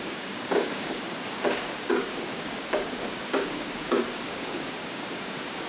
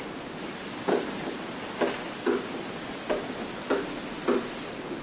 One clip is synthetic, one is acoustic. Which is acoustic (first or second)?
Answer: second